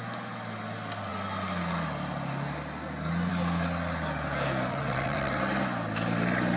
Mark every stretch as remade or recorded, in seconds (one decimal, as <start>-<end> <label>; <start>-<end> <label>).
0.0-4.7 recorded; 4.7-5.4 remade; 5.4-6.6 recorded